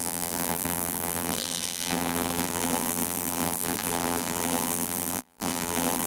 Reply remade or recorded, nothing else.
remade